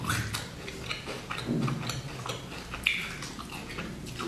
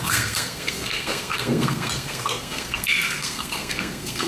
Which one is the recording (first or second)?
first